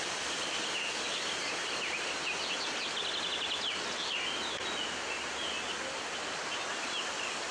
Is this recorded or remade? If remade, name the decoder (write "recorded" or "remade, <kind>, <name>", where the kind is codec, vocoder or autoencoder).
recorded